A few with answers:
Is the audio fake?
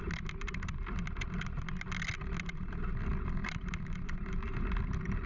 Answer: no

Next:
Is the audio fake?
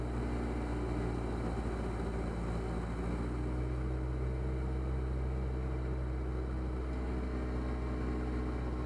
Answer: no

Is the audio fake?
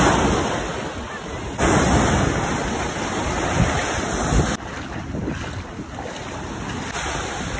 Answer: no